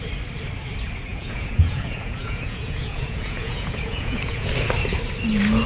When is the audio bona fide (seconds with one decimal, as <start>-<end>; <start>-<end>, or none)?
0.0-1.1; 4.5-5.7